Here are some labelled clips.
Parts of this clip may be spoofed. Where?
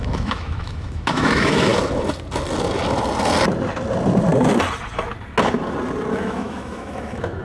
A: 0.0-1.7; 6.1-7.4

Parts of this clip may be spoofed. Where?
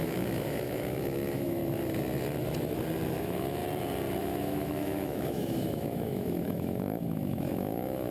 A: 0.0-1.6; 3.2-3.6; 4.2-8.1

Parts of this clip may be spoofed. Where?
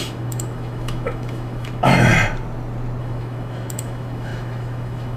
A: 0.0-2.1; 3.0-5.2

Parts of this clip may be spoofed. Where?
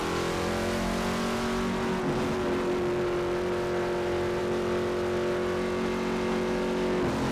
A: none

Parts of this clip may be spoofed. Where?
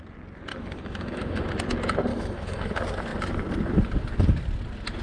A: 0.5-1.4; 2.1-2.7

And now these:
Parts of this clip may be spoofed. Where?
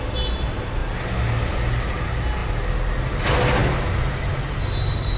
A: none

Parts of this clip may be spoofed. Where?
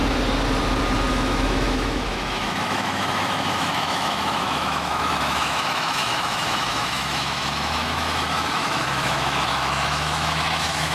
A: 1.1-10.9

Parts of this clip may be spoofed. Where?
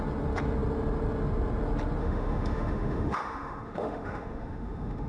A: 2.0-5.1